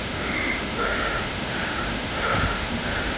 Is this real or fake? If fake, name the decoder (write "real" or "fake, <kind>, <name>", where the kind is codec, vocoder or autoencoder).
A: fake, autoencoder, DAC-VAE